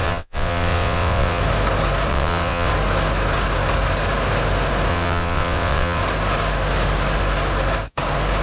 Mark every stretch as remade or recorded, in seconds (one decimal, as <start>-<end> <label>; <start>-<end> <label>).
0.0-1.4 remade; 1.4-2.1 recorded; 2.1-2.7 remade; 2.7-4.9 recorded; 4.9-6.0 remade; 6.0-8.4 recorded

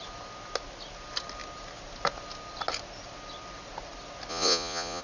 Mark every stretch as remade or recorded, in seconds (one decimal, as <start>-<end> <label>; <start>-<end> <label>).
0.0-4.3 recorded; 4.3-5.0 remade